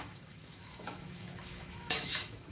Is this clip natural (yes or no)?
no